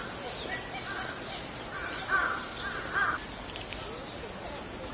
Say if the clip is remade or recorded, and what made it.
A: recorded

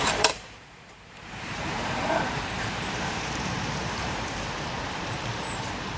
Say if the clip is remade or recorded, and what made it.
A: remade, vocoder, BigVGAN v2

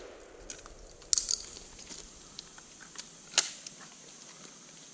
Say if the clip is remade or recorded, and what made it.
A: recorded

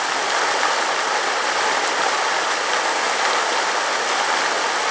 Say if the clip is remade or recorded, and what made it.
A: recorded